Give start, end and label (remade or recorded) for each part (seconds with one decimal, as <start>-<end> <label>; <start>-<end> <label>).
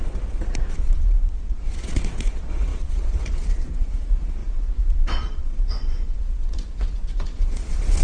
0.0-8.0 remade